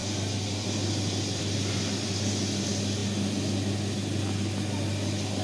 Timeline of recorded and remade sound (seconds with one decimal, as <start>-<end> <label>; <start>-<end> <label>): 0.0-1.4 recorded; 1.4-5.4 remade